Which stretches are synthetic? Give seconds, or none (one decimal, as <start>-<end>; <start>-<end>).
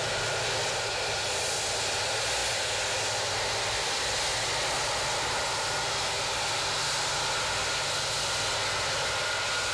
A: none